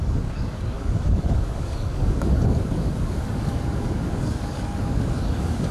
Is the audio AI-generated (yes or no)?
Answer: yes